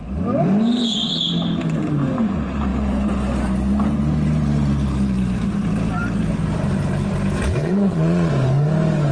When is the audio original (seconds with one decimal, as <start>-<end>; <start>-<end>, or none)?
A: 0.0-7.6; 8.3-9.1